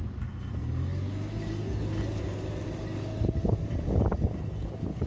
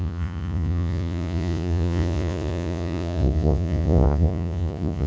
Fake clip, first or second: second